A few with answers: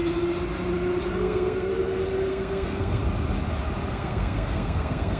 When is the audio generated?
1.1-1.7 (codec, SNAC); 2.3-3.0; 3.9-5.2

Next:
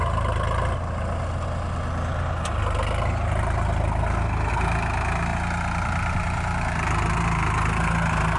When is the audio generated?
none